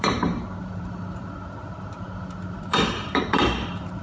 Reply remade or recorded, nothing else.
remade